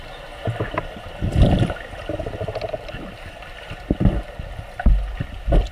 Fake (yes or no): no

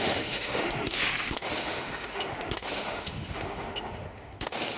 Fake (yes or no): yes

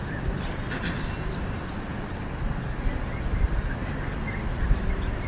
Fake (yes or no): no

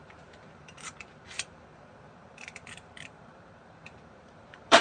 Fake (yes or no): yes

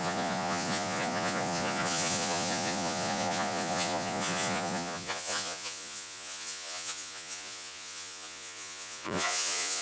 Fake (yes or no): yes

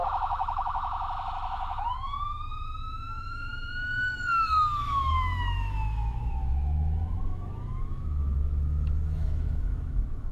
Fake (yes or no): yes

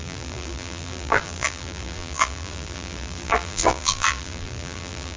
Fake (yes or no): yes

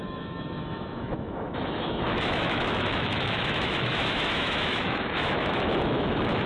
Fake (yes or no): yes